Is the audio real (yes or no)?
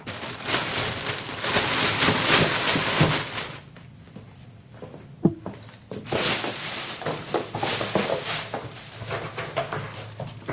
yes